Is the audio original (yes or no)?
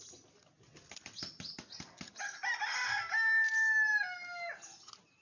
yes